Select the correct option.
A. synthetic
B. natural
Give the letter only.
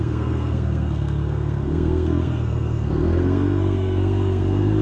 A